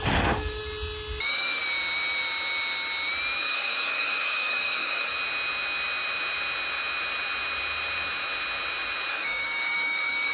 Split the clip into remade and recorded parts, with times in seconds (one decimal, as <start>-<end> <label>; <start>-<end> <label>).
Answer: 0.0-0.6 remade; 0.6-1.2 recorded; 1.2-1.6 remade; 1.6-3.4 recorded; 3.4-5.1 remade; 5.1-9.1 recorded; 9.1-10.3 remade